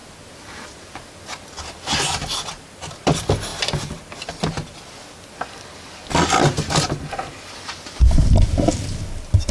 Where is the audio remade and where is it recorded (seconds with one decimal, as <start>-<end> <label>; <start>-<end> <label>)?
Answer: 0.0-9.5 recorded